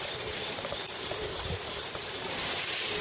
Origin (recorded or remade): remade